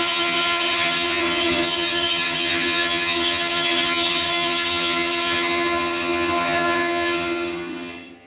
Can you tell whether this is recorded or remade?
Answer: remade